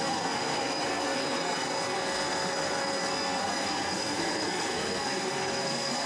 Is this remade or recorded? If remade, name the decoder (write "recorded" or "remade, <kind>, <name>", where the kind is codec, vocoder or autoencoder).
remade, codec, SNAC